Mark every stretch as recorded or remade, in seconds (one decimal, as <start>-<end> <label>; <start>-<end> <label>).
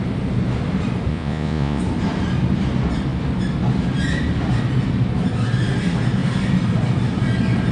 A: 0.0-1.1 recorded; 1.1-1.8 remade; 1.8-7.7 recorded